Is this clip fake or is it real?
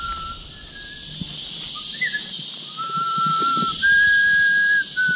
real